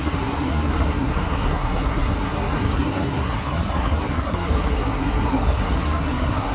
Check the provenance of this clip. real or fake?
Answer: fake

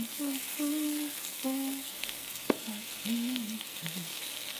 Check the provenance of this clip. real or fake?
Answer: fake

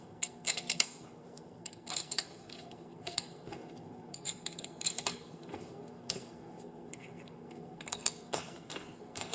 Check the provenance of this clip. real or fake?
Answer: fake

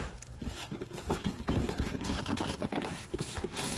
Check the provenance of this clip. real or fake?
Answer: fake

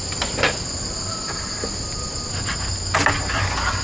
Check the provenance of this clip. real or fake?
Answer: real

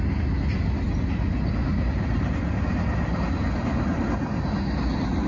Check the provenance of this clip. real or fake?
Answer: real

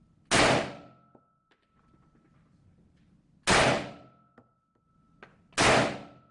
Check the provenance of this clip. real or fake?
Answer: real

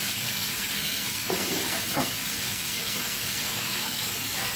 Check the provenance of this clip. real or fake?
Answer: fake